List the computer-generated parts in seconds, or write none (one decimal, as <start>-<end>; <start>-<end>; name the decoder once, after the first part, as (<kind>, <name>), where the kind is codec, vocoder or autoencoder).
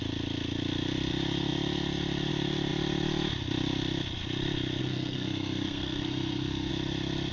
4.8-6.7 (codec, SNAC)